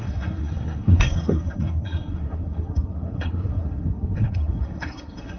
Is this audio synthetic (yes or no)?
yes